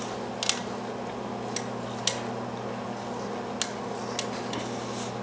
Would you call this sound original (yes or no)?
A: yes